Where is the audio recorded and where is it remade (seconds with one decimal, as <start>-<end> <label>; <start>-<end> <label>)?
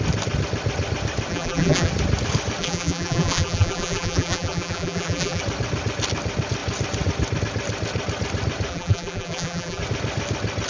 0.0-1.3 recorded; 1.3-1.9 remade; 1.9-2.6 recorded; 2.6-5.4 remade; 5.4-8.7 recorded; 8.7-9.8 remade; 9.8-10.7 recorded